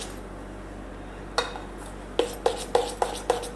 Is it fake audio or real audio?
real